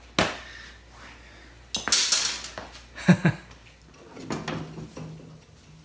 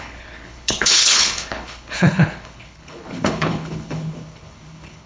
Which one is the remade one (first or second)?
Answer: second